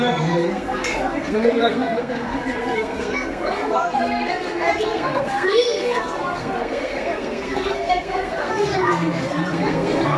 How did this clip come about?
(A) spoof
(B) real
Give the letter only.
A